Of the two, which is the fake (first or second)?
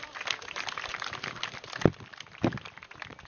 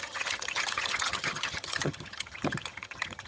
second